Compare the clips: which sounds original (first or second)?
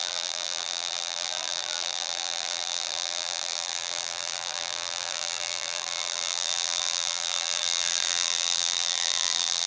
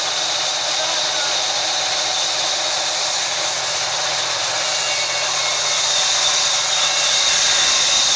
second